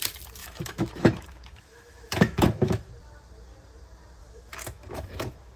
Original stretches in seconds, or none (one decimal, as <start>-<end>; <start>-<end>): 0.0-0.4; 2.9-4.2